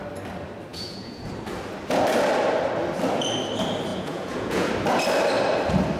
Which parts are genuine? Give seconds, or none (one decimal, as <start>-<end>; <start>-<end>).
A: 0.0-0.7; 1.3-3.9; 4.7-6.0